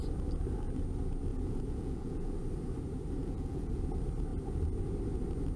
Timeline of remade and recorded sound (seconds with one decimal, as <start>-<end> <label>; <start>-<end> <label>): 0.0-1.3 recorded; 1.3-2.3 remade; 2.3-3.2 recorded; 3.2-3.8 remade; 3.8-5.6 recorded